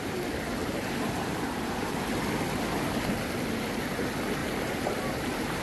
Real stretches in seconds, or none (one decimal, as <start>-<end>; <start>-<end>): 0.0-0.6; 1.9-4.4